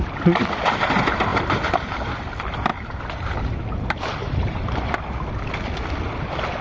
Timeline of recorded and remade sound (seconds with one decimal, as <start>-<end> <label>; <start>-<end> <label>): 0.0-1.3 recorded; 1.3-1.9 remade; 1.9-2.7 recorded; 2.7-4.9 remade; 4.9-6.6 recorded